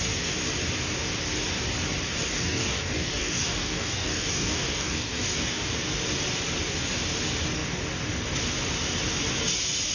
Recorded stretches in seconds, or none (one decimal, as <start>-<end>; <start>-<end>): 0.0-2.3; 5.7-9.9